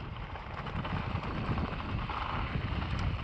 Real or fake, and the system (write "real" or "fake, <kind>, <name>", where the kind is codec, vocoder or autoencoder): real